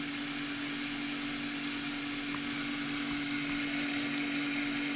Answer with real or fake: real